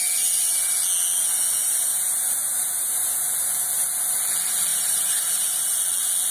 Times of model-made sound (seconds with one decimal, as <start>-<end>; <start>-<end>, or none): 1.6-3.5; 4.7-5.8